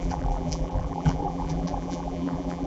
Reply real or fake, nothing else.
fake